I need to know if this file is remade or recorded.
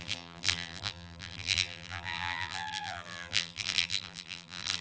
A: remade